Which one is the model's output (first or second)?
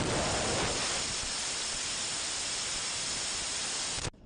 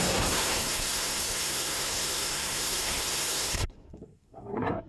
second